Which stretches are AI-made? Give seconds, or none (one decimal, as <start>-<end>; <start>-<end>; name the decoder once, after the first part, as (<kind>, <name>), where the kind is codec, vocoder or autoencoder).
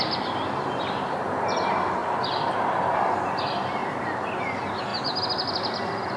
none